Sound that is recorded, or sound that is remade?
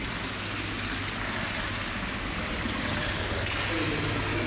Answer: recorded